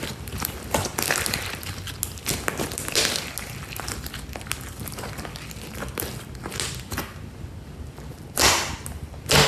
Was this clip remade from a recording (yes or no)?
no